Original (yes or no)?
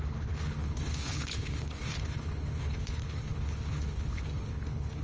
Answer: no